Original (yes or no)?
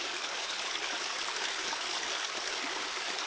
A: no